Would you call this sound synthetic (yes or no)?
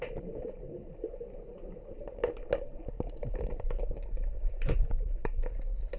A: no